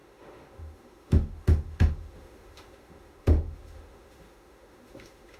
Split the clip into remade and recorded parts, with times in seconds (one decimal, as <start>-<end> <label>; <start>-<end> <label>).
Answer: 0.0-5.4 remade